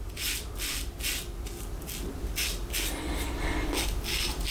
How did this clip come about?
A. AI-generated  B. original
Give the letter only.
B